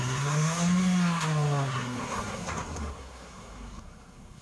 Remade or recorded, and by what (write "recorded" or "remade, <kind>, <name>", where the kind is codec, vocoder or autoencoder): remade, codec, SNAC